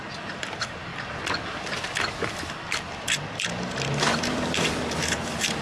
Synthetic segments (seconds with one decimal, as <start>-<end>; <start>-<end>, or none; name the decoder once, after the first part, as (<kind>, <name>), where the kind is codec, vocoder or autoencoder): 0.0-0.9 (vocoder, BigVGAN v2); 4.2-5.6